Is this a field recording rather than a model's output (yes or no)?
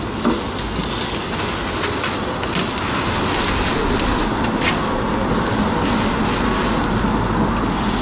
yes